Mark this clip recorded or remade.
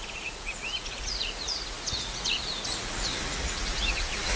remade